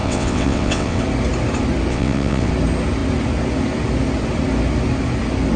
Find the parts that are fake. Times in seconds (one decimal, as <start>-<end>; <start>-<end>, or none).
0.0-1.0; 1.9-2.5